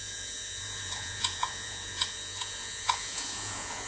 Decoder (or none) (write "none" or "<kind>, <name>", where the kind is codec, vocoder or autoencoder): vocoder, Vocos